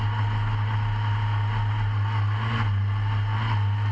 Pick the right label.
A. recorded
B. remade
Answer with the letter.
A